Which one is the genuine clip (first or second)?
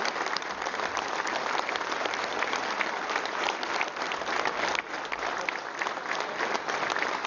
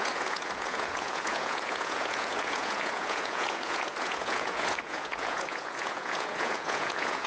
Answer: first